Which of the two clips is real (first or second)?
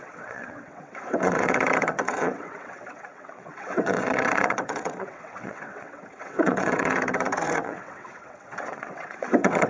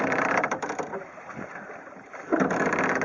second